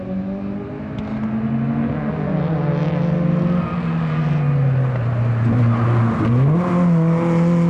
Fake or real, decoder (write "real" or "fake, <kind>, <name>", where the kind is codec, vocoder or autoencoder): real